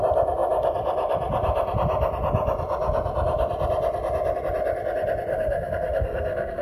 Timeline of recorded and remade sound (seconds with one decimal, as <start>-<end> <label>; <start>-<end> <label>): 0.0-5.3 recorded; 5.3-6.6 remade